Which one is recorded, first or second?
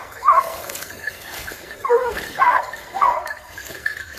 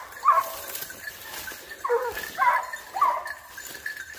second